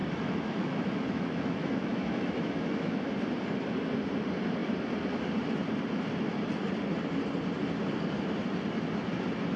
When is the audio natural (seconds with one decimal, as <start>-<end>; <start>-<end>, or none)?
3.1-9.6

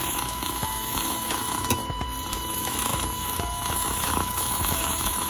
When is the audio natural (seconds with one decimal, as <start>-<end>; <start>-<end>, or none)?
1.8-2.3

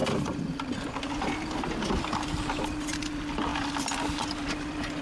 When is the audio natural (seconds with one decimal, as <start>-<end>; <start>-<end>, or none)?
0.0-5.0

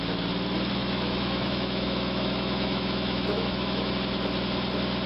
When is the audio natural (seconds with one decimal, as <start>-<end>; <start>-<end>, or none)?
0.0-0.8; 3.9-5.1